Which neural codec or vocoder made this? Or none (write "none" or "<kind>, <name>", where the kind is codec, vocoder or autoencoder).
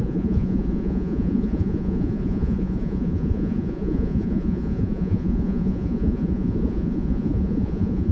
vocoder, Vocos